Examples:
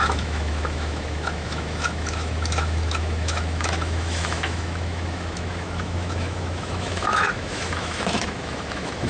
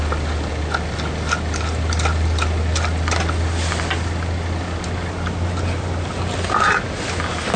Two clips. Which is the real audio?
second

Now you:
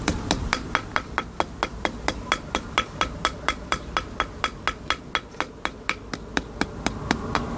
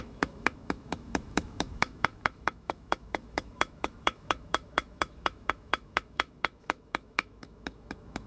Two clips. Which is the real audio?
first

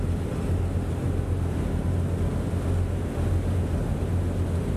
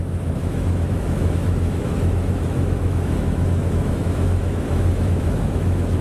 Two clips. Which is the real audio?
first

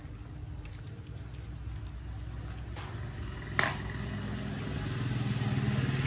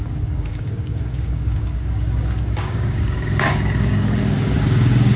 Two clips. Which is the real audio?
first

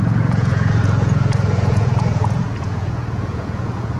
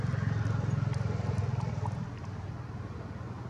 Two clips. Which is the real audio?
second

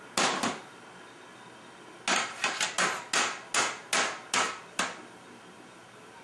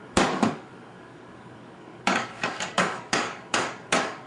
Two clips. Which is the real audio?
first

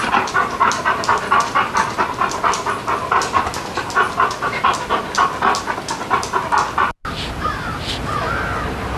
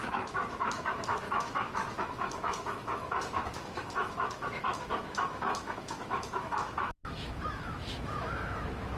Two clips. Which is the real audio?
first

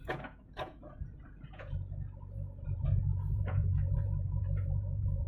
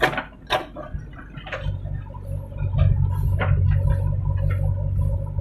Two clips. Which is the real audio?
second